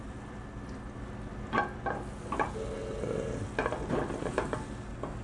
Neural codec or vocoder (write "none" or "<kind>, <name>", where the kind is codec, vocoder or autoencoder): none